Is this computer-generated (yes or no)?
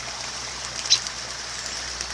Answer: no